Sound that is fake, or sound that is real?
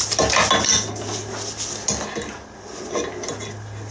real